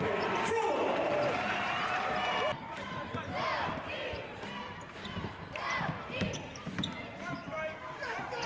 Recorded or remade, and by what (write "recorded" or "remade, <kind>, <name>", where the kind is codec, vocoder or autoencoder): remade, vocoder, BigVGAN v2